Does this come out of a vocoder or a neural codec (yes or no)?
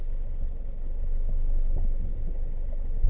no